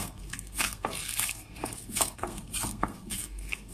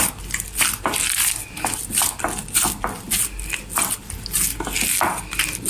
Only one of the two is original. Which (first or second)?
second